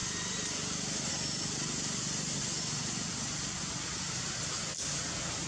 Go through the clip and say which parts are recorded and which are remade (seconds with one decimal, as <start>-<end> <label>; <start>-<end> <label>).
0.0-1.1 remade; 1.1-5.5 recorded